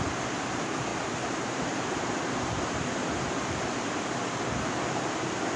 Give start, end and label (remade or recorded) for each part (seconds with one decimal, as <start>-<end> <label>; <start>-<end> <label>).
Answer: 0.0-0.9 recorded; 0.9-3.1 remade; 3.1-5.6 recorded